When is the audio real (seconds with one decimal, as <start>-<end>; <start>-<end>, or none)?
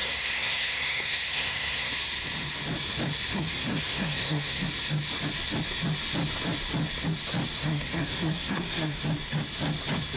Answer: 1.9-3.3; 4.7-7.6; 9.0-10.2